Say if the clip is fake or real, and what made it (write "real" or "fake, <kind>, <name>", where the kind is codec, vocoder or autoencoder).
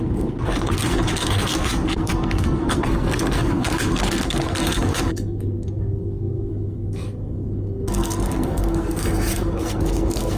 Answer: fake, codec, SNAC